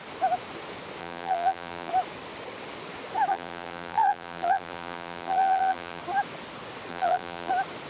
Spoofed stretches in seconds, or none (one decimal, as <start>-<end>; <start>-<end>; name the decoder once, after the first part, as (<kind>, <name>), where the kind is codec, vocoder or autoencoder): 1.0-1.9 (vocoder, BigVGAN v2); 3.3-6.0; 6.9-7.5